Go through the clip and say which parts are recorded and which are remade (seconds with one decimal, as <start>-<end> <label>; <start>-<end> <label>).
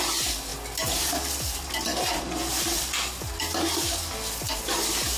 0.0-5.2 recorded